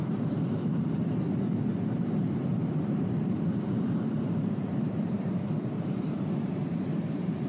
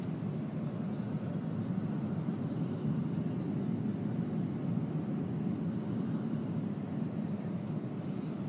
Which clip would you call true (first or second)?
second